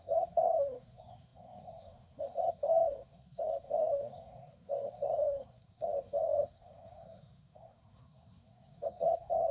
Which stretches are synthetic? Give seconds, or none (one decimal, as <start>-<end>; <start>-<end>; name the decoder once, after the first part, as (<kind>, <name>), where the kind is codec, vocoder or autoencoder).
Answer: 0.0-9.5 (codec, SNAC)